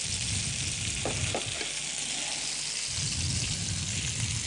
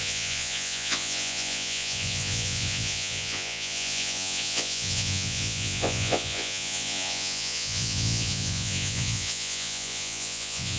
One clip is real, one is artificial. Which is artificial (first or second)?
second